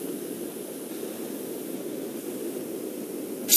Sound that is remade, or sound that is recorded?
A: recorded